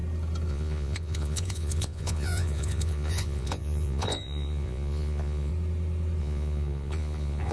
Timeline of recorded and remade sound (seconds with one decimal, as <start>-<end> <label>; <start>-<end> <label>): 0.0-0.5 recorded; 0.5-5.5 remade; 5.5-6.2 recorded; 6.2-7.5 remade